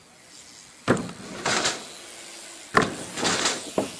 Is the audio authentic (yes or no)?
yes